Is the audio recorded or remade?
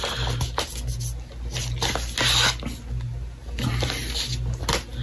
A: recorded